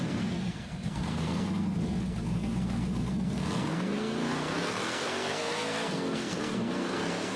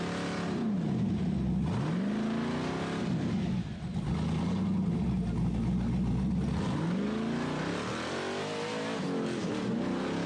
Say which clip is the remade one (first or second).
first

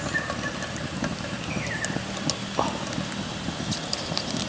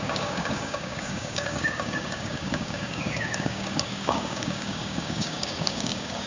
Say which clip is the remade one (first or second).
second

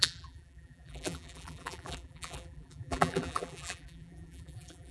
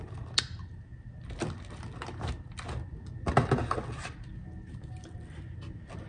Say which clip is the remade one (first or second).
first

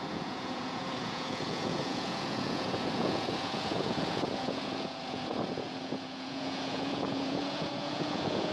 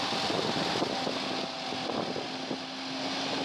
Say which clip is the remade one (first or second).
first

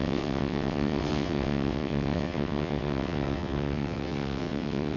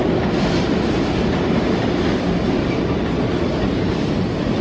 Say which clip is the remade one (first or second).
first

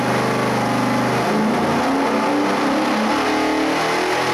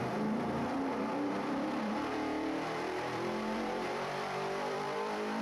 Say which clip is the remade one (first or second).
second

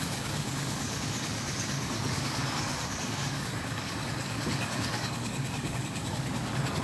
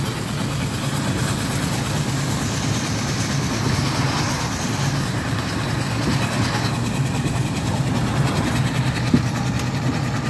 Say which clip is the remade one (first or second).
first